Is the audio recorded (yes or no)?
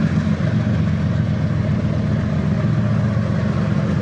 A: yes